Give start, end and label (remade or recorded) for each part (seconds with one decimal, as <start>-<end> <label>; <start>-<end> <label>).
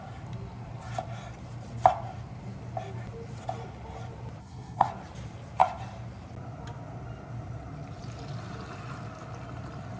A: 0.0-4.4 recorded; 4.4-4.9 remade; 4.9-10.0 recorded